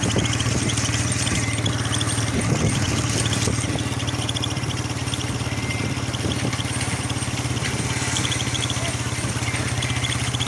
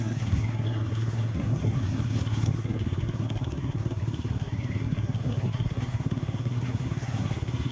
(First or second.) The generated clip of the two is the second